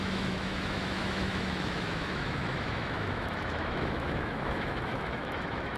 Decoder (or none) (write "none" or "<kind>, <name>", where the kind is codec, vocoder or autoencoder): autoencoder, DAC-VAE